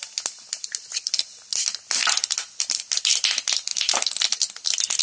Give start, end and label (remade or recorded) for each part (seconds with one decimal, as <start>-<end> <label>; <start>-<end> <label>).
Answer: 0.0-3.7 remade; 3.7-4.2 recorded; 4.2-5.0 remade